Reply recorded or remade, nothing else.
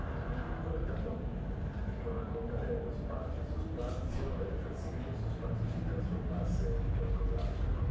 recorded